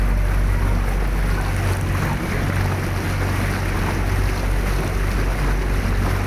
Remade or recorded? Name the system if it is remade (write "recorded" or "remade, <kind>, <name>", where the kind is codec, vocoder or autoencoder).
recorded